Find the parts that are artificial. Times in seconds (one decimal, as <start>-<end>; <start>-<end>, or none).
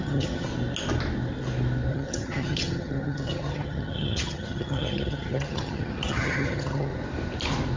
0.0-0.5; 1.9-6.9